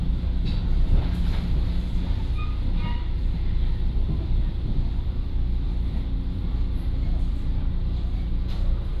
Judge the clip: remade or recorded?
remade